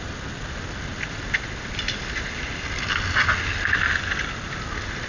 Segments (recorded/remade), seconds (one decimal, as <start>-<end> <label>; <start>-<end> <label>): 0.0-5.1 recorded